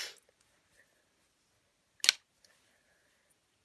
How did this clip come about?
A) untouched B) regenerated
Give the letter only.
A